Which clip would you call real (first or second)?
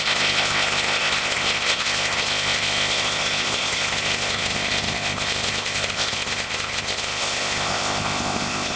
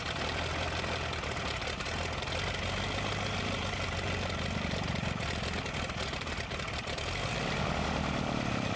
second